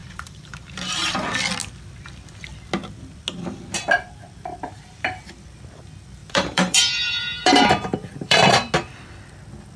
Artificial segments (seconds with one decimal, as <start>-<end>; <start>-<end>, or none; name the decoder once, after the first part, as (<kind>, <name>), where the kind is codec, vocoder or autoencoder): 0.0-1.2 (vocoder, BigVGAN v2); 6.2-8.7